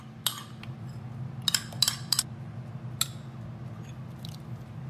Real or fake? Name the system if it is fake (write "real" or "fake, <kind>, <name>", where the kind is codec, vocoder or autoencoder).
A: real